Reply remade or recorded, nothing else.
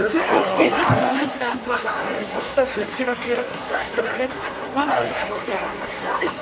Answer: remade